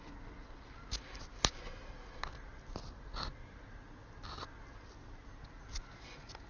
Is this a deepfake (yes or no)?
no